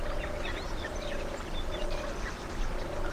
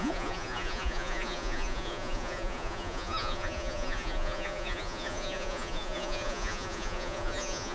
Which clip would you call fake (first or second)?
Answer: second